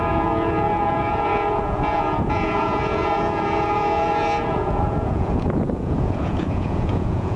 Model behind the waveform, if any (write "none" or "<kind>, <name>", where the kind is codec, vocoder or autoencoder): vocoder, Vocos